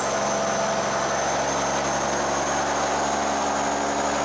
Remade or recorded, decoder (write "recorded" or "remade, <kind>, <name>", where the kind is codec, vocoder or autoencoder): recorded